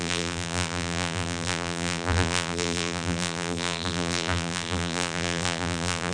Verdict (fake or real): fake